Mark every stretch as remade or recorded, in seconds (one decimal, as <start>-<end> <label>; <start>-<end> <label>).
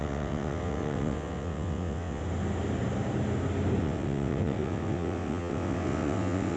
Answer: 0.0-2.2 remade; 2.2-3.8 recorded; 3.8-6.6 remade